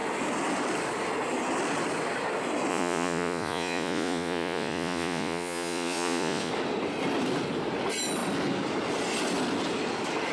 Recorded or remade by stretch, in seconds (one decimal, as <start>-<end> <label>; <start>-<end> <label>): 0.0-2.7 recorded; 2.7-6.5 remade; 6.5-10.3 recorded